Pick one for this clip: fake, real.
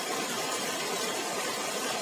fake